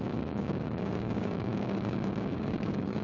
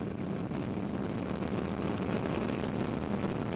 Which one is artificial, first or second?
first